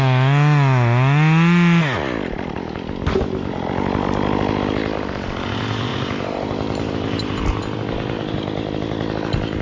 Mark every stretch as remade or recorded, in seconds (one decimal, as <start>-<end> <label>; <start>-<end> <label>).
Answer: 0.0-5.9 recorded; 5.9-7.6 remade; 7.6-9.6 recorded